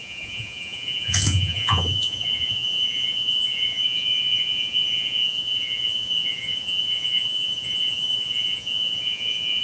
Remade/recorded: remade